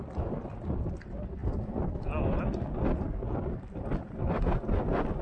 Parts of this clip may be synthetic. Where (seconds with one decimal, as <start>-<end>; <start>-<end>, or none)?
none

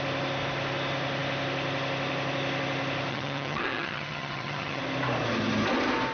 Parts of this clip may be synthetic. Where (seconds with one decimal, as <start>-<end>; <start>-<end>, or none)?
3.1-4.8